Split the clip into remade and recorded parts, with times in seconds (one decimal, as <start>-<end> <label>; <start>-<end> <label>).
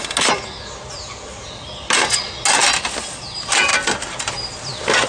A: 0.0-5.1 recorded